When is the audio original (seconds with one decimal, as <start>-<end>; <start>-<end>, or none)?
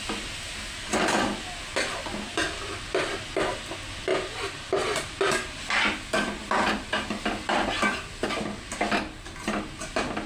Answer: 0.0-4.1; 5.3-10.3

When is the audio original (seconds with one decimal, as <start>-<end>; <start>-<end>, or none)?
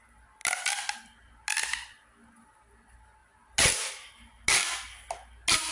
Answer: 0.0-5.7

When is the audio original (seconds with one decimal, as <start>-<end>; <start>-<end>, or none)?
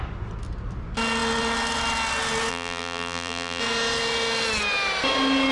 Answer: 0.0-2.5; 3.6-5.5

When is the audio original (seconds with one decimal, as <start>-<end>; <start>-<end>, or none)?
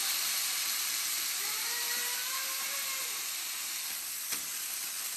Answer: 3.1-5.2